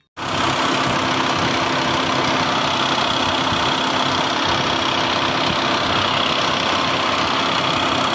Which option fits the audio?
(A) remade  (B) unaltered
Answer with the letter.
B